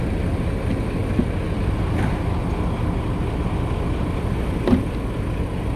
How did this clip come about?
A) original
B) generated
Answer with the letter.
A